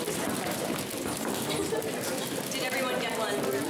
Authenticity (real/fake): real